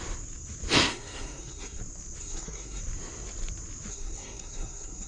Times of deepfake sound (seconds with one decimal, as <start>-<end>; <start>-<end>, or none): 0.8-1.8; 2.2-2.8; 3.9-5.1